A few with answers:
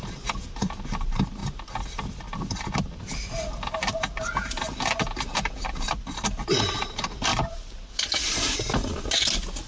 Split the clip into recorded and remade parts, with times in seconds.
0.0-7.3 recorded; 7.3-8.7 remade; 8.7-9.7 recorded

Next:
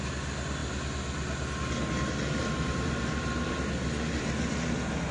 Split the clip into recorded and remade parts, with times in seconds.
0.0-2.4 recorded; 2.4-3.5 remade; 3.5-5.1 recorded